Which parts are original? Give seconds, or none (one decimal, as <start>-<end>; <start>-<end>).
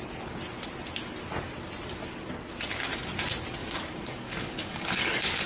0.0-3.6